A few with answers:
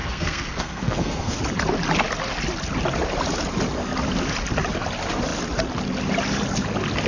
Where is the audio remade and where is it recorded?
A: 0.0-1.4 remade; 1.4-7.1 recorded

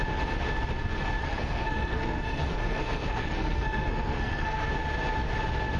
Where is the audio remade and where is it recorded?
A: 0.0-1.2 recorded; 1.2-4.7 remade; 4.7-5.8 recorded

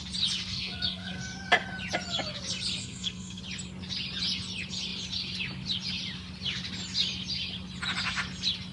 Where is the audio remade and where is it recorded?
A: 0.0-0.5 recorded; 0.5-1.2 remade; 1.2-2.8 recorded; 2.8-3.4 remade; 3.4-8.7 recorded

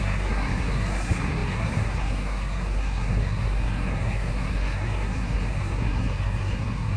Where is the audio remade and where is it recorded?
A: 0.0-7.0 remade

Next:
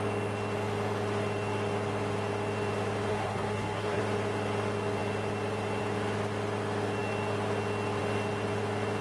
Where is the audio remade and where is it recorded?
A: 0.0-3.1 recorded; 3.1-4.0 remade; 4.0-9.0 recorded